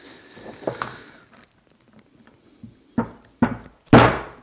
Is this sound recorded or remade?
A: recorded